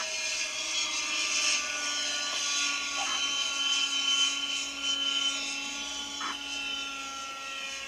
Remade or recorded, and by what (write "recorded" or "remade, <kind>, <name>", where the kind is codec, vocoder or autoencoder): recorded